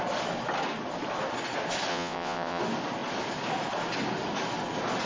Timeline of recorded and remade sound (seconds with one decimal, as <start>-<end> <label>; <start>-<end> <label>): 0.0-1.9 recorded; 1.9-2.6 remade; 2.6-5.1 recorded